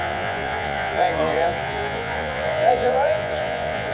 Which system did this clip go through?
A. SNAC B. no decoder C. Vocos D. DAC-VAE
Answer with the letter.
C